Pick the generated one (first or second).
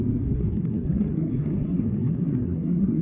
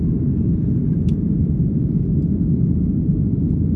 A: first